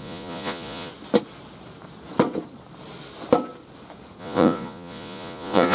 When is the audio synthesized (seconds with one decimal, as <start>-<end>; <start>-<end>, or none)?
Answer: 0.0-0.9; 4.2-5.7